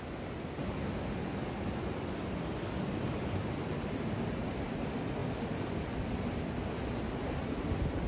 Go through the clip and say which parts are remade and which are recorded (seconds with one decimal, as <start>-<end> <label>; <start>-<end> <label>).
0.0-8.1 recorded

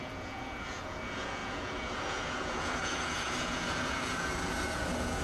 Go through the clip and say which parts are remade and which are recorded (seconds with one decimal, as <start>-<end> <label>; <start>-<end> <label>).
0.0-5.2 remade

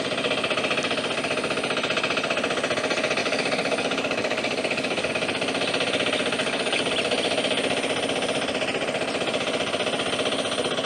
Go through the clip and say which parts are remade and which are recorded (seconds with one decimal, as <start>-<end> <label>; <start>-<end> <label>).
0.0-3.2 recorded; 3.2-5.1 remade; 5.1-6.4 recorded; 6.4-6.9 remade; 6.9-10.9 recorded

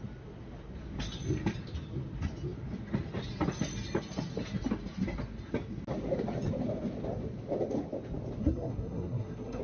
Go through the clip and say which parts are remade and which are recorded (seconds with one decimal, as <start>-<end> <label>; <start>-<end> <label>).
0.0-8.4 recorded; 8.4-9.6 remade

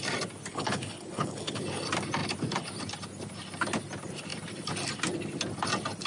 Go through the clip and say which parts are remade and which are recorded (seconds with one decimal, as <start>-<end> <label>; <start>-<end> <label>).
0.0-0.5 recorded; 0.5-1.6 remade; 1.6-6.1 recorded